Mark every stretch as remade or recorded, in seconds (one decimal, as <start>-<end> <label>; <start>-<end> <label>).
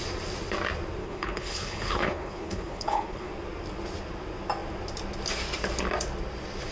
0.0-1.0 recorded; 1.0-3.3 remade; 3.3-6.7 recorded